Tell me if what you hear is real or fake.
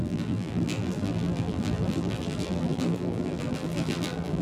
fake